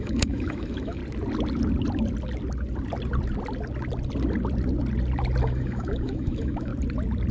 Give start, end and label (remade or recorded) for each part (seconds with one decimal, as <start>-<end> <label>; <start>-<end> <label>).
0.0-1.0 remade; 1.0-5.4 recorded; 5.4-6.7 remade; 6.7-7.3 recorded